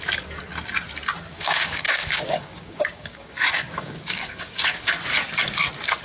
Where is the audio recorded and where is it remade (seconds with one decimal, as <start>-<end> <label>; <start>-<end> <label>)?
0.0-1.3 recorded; 1.3-4.9 remade; 4.9-6.0 recorded